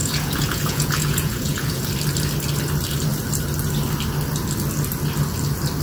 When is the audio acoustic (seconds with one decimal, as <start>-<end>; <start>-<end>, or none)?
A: 1.9-5.8